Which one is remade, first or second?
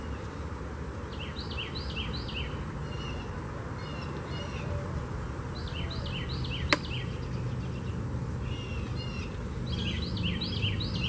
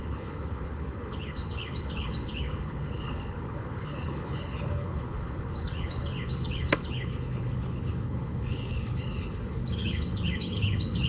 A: second